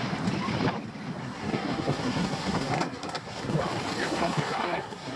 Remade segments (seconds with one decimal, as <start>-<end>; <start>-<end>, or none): 1.2-3.6; 4.0-5.2

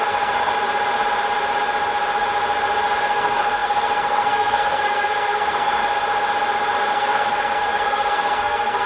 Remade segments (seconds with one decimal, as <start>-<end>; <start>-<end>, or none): 0.0-0.5; 3.0-5.8; 6.9-8.9

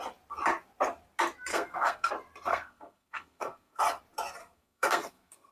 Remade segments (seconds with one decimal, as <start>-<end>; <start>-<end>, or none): 1.5-2.1; 2.5-3.8; 4.4-5.5

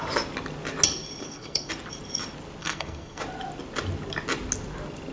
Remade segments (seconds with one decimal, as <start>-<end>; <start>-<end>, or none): 1.2-1.7; 2.6-3.2

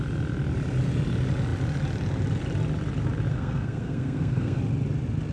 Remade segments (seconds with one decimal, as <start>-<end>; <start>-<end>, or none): 3.3-4.6

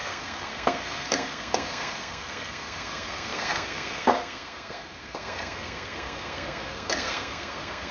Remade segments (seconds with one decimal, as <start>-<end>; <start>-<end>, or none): 0.0-7.9

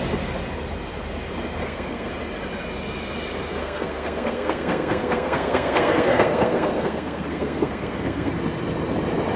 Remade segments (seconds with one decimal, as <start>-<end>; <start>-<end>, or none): 1.6-2.1; 3.6-8.3